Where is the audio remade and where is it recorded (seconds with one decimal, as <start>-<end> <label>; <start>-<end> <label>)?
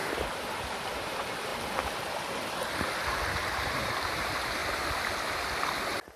0.0-1.5 remade; 1.5-3.4 recorded; 3.4-4.6 remade; 4.6-6.2 recorded